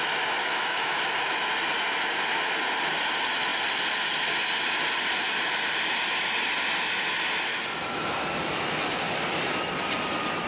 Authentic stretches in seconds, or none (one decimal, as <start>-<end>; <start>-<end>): 0.0-0.4; 1.0-7.5; 8.1-10.5